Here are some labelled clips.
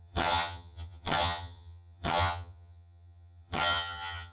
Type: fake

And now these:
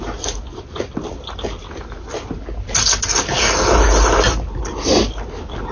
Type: real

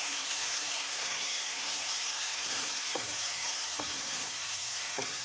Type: fake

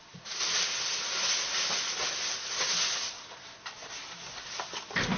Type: real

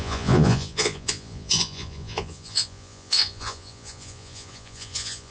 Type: fake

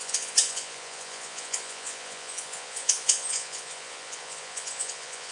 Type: fake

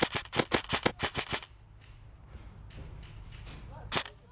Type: real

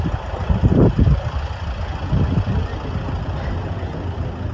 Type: real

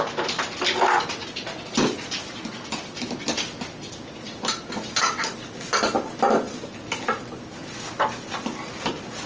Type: real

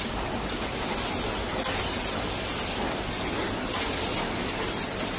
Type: real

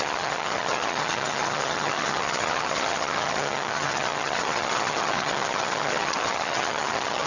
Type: fake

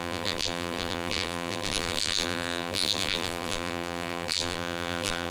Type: fake